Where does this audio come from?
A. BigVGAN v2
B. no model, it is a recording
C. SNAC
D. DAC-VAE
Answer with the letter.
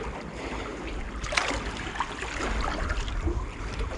B